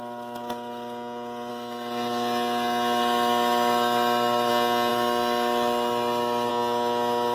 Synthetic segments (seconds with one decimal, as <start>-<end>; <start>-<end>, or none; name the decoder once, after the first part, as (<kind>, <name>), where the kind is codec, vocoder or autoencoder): 1.5-4.5 (autoencoder, DAC-VAE); 4.9-6.5